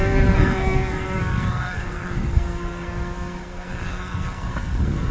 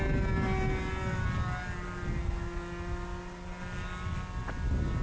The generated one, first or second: first